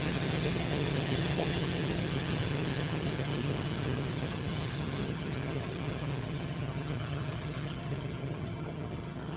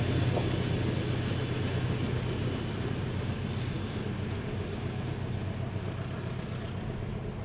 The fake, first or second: first